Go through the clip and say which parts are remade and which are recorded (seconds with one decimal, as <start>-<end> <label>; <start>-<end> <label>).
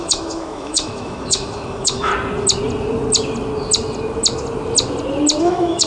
0.0-2.1 remade; 2.1-5.4 recorded; 5.4-5.9 remade